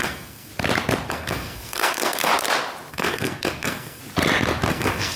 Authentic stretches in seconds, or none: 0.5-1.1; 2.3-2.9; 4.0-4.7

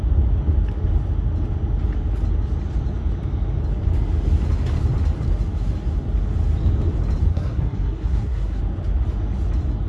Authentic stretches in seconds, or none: 0.0-7.3; 8.6-9.9

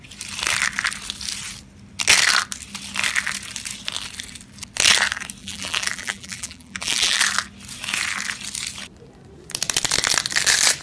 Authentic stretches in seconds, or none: 0.0-5.4; 7.2-10.8

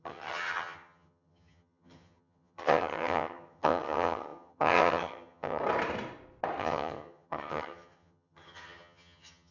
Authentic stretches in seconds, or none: 5.6-6.6